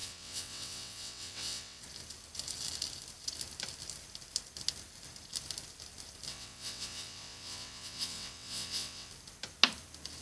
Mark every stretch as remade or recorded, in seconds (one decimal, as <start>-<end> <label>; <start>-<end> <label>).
0.0-1.8 remade; 1.8-6.3 recorded; 6.3-9.1 remade; 9.1-10.2 recorded